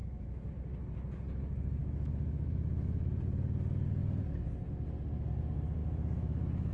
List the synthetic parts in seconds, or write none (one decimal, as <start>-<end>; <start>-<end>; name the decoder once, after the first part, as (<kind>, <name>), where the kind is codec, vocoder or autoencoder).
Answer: 0.0-0.5 (autoencoder, DAC-VAE); 1.8-3.2; 5.8-6.7

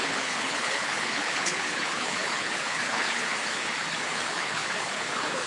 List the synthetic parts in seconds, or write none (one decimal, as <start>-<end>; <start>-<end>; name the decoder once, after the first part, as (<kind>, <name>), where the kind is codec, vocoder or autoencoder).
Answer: 0.0-5.5 (codec, HILCodec)

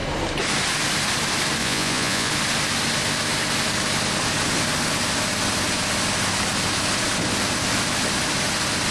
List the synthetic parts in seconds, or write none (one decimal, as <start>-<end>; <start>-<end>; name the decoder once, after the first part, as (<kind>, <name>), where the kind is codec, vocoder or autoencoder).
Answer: 1.6-2.3 (vocoder, Vocos)

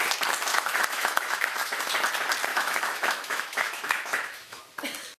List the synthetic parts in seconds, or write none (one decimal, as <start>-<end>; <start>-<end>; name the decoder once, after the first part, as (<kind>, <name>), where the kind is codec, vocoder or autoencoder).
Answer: 0.5-1.8 (autoencoder, DAC-VAE); 2.5-4.6

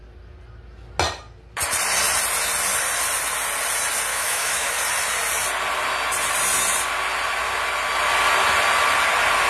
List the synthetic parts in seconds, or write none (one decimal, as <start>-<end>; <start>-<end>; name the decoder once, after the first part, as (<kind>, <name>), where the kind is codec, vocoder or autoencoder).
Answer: 4.1-4.7 (autoencoder, DAC-VAE)

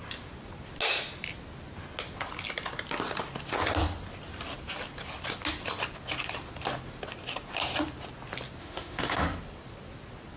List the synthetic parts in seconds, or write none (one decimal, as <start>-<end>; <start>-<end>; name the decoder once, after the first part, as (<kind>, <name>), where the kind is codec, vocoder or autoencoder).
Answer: 8.6-9.2 (autoencoder, DAC-VAE)

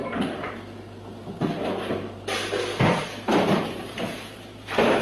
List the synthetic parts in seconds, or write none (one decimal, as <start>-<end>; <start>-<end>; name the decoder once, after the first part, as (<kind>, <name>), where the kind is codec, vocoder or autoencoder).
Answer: none